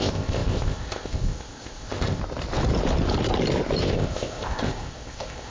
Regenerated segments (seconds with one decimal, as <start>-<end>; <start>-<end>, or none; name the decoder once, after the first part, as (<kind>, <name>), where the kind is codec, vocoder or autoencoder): 0.0-2.2 (codec, ZipCodec); 3.8-5.5

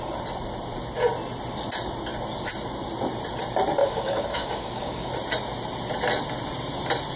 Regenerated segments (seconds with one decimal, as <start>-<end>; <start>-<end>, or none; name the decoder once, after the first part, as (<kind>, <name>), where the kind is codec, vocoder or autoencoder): 3.8-5.1 (codec, DAC)

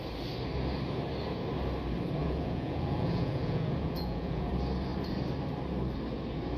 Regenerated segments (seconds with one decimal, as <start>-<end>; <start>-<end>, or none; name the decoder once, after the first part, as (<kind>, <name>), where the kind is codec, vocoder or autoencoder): 2.2-4.5 (vocoder, Vocos)

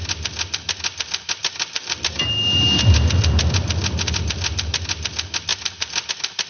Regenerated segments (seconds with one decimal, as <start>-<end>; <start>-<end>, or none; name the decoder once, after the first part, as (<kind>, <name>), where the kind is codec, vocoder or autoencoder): 1.4-2.2 (vocoder, BigVGAN v2)

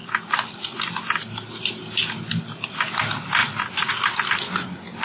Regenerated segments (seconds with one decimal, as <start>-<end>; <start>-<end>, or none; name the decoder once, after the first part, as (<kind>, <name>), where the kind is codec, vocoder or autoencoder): none

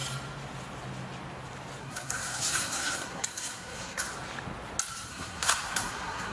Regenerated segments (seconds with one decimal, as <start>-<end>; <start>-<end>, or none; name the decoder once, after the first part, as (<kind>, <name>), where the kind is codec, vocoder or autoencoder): 1.8-4.1 (codec, SNAC); 5.1-6.3